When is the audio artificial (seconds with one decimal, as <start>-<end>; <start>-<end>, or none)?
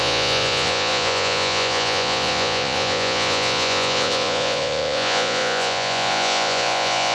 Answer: 0.0-7.1